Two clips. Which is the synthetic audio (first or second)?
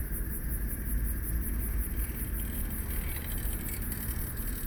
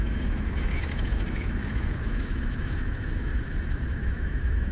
second